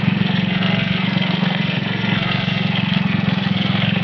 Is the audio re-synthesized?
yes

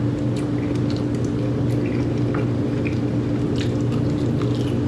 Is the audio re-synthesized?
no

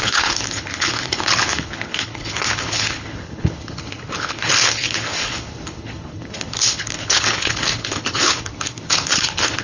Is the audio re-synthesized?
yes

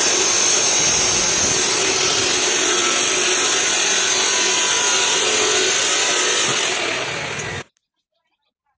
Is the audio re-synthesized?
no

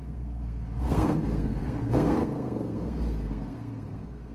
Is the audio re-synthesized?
yes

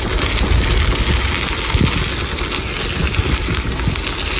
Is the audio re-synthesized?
no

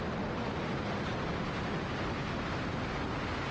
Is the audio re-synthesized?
no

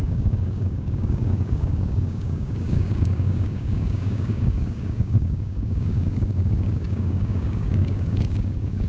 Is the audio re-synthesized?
yes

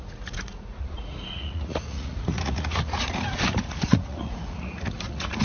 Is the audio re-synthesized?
yes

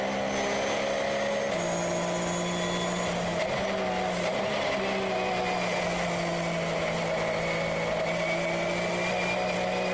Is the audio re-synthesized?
no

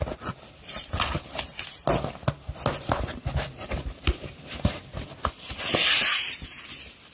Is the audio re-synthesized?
no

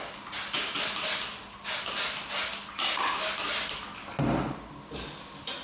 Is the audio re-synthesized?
no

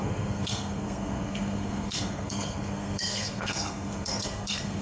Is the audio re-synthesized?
yes